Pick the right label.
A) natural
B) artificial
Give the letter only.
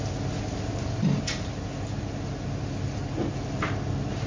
A